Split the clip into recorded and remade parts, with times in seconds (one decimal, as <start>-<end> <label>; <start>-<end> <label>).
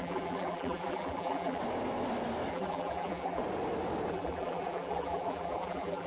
0.0-1.6 remade; 1.6-2.5 recorded; 2.5-3.4 remade; 3.4-4.1 recorded; 4.1-6.1 remade